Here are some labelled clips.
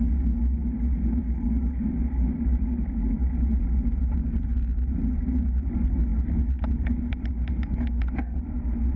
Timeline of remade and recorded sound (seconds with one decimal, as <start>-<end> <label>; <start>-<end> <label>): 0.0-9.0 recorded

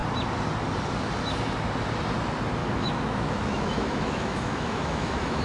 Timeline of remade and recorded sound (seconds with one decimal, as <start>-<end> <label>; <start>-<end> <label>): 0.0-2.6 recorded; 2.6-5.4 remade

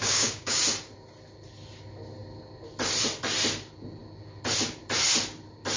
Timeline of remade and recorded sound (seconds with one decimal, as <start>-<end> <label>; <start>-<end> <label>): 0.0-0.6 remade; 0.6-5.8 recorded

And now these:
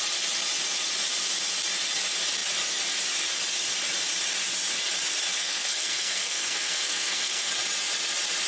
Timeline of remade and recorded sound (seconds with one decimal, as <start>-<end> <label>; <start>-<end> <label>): 0.0-5.4 recorded; 5.4-7.5 remade; 7.5-8.5 recorded

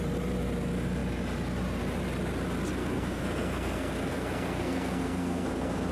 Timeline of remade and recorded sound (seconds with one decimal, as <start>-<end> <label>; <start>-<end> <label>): 0.0-2.8 recorded; 2.8-5.9 remade